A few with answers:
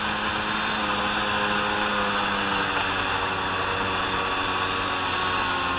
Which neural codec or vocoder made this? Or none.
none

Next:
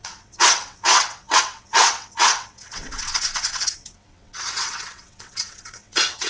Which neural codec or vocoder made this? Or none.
vocoder, WaveNeXt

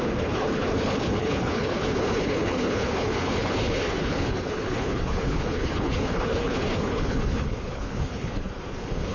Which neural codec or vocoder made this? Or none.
codec, HILCodec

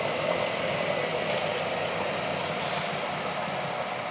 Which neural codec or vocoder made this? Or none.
none